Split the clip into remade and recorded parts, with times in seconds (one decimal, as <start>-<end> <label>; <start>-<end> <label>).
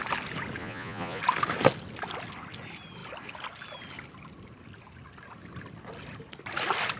0.0-0.6 recorded; 0.6-1.2 remade; 1.2-7.0 recorded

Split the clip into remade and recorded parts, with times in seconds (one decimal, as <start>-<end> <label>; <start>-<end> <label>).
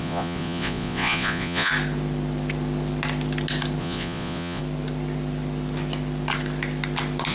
0.0-1.7 remade; 1.7-3.8 recorded; 3.8-4.6 remade; 4.6-7.3 recorded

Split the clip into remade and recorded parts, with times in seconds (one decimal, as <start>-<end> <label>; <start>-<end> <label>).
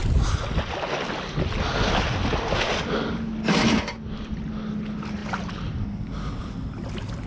0.0-7.3 recorded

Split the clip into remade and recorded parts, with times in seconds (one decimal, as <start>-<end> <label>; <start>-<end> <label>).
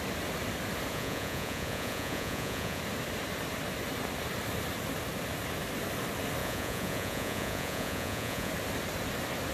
0.0-0.9 recorded; 0.9-2.8 remade; 2.8-6.4 recorded; 6.4-8.5 remade; 8.5-9.5 recorded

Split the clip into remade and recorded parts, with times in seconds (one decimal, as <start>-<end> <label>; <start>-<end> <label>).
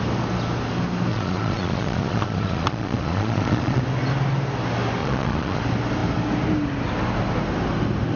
0.0-1.1 recorded; 1.1-3.8 remade; 3.8-5.0 recorded; 5.0-5.6 remade; 5.6-8.2 recorded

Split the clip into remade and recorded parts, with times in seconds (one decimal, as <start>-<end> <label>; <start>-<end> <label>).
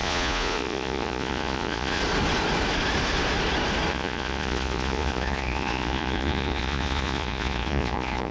0.0-2.0 remade; 2.0-3.9 recorded; 3.9-8.3 remade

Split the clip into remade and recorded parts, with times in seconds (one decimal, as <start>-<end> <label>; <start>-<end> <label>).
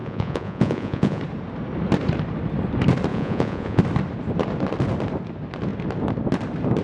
0.0-1.2 remade; 1.2-3.1 recorded; 3.1-3.8 remade; 3.8-6.8 recorded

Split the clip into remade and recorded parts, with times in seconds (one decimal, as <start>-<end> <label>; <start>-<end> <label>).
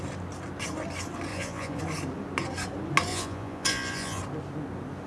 0.0-1.3 recorded; 1.3-1.8 remade; 1.8-3.1 recorded; 3.1-4.2 remade; 4.2-5.1 recorded